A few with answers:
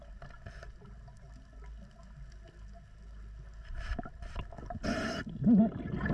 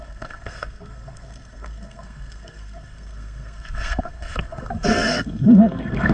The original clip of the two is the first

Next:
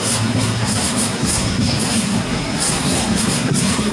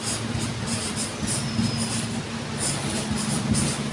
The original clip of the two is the second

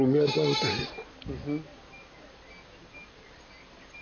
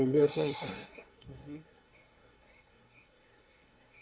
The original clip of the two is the first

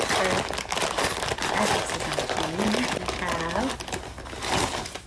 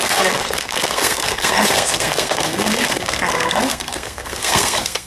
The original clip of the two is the first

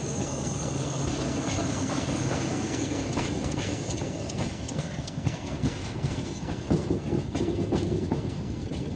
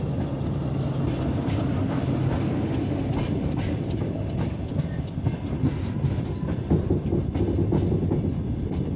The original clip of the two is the second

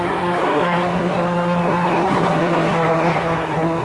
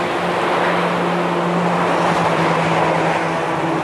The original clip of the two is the second